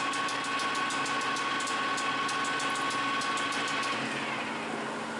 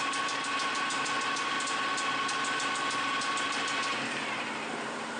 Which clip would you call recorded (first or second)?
first